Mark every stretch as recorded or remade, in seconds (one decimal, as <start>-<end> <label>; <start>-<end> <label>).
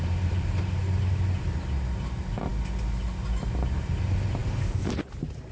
0.0-4.4 recorded; 4.4-4.9 remade; 4.9-5.5 recorded